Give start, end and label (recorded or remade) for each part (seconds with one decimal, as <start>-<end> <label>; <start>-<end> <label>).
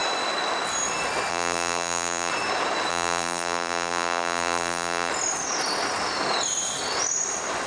0.0-1.3 recorded; 1.3-2.3 remade; 2.3-2.9 recorded; 2.9-5.1 remade; 5.1-7.7 recorded